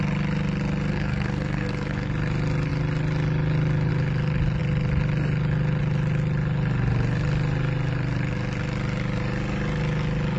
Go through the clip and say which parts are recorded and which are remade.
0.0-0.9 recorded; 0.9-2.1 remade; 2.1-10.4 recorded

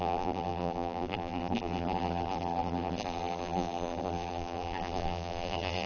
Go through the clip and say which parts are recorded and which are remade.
0.0-5.9 remade

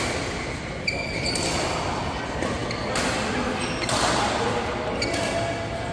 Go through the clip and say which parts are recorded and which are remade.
0.0-5.9 recorded

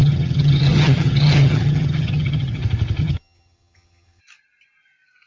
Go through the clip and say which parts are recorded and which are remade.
0.0-2.6 remade; 2.6-3.0 recorded; 3.0-4.2 remade; 4.2-5.3 recorded

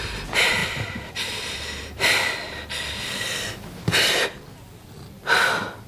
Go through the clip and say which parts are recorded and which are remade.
0.0-5.9 recorded

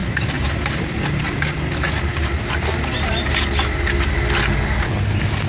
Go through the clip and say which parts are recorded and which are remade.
0.0-0.9 remade; 0.9-5.5 recorded

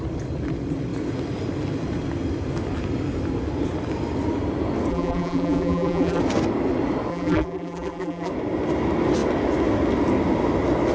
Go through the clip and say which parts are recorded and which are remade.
0.0-4.9 recorded; 4.9-6.2 remade; 6.2-7.1 recorded; 7.1-8.3 remade; 8.3-10.9 recorded

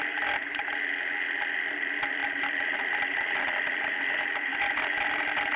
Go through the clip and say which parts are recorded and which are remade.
0.0-2.2 recorded; 2.2-3.9 remade; 3.9-5.6 recorded